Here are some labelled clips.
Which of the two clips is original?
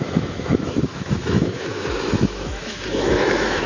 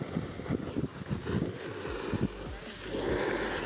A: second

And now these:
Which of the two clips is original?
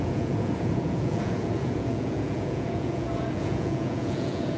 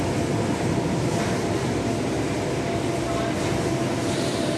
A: second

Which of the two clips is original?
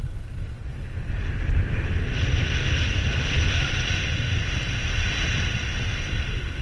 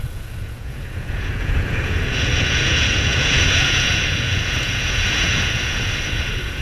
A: first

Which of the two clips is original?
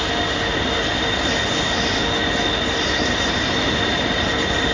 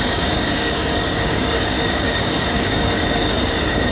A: first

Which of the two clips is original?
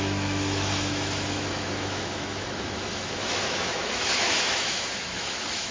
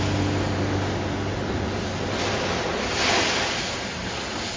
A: second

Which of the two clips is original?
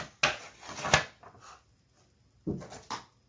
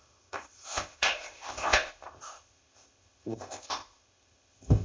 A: first